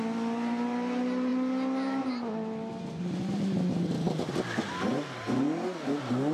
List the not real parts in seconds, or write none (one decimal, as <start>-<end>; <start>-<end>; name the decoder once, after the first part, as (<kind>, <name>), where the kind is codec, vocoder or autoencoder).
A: none